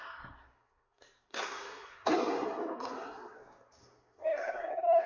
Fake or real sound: fake